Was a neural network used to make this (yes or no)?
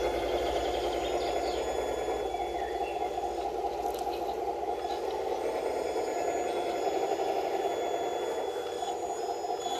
no